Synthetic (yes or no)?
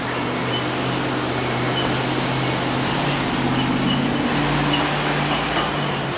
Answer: no